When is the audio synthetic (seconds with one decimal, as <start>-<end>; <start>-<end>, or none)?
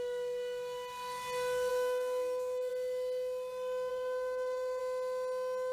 1.7-2.7; 3.9-4.8